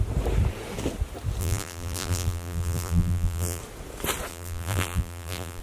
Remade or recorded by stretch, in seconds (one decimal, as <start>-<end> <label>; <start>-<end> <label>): 0.0-1.4 recorded; 1.4-3.6 remade; 3.6-4.3 recorded; 4.3-5.6 remade